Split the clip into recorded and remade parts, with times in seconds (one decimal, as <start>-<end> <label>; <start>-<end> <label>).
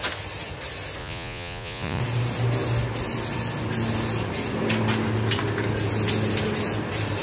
0.0-1.0 recorded; 1.0-2.0 remade; 2.0-7.2 recorded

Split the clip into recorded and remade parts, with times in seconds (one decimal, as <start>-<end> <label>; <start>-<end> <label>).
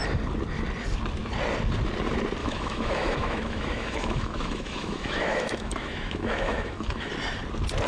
0.0-2.4 recorded; 2.4-7.1 remade; 7.1-7.9 recorded